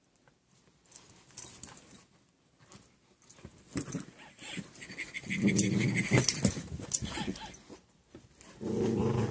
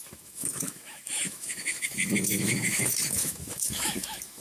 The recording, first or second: first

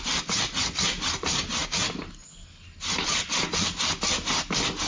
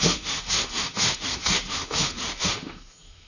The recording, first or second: first